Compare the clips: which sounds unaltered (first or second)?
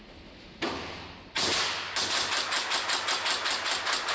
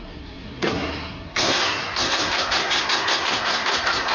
first